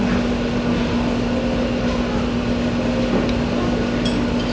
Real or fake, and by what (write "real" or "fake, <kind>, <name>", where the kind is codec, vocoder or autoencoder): real